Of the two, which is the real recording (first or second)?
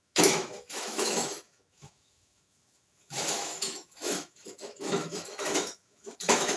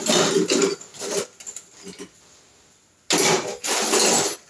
second